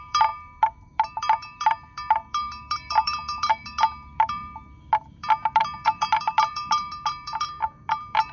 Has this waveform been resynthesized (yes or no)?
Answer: yes